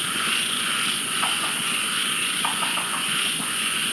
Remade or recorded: remade